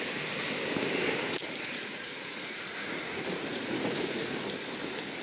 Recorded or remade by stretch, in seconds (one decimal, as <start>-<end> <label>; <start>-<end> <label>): 0.0-1.4 recorded; 1.4-4.3 remade; 4.3-5.2 recorded